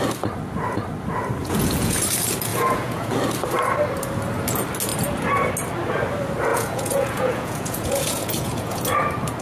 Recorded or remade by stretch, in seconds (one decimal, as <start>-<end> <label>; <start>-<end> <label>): 0.0-1.4 recorded; 1.4-2.0 remade; 2.0-2.5 recorded; 2.5-3.1 remade; 3.1-6.5 recorded; 6.5-8.8 remade; 8.8-9.4 recorded